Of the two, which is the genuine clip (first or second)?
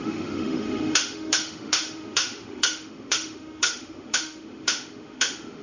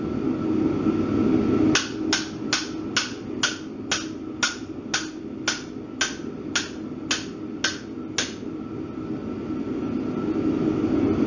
second